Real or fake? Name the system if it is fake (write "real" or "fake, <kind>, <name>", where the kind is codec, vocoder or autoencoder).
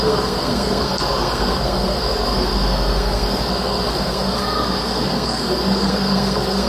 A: fake, codec, SNAC